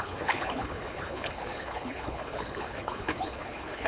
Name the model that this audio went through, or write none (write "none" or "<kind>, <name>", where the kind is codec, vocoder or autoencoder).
codec, HILCodec